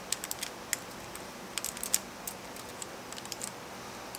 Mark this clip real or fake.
real